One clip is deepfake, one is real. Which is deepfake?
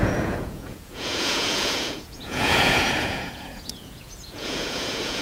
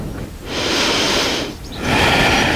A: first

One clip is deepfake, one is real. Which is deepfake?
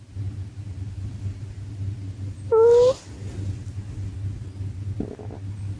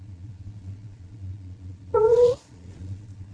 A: second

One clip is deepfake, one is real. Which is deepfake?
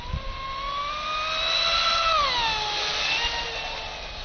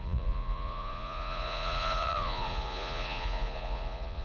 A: second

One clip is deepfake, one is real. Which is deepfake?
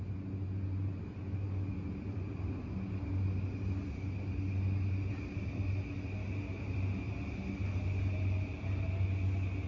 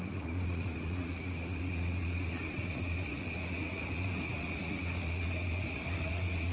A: second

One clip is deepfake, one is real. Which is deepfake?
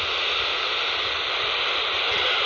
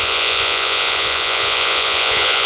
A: second